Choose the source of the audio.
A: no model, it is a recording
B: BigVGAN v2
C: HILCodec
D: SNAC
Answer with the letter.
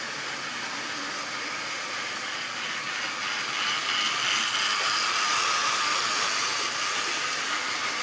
A